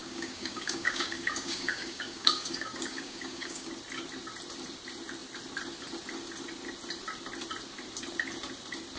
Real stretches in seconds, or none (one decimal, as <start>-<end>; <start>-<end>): 3.7-9.0